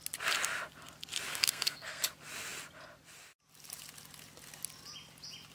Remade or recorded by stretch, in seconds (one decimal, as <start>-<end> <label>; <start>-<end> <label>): 0.0-1.3 recorded; 1.3-2.0 remade; 2.0-5.5 recorded